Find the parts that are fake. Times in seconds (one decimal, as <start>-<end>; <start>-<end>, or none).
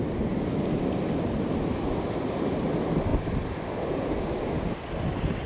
none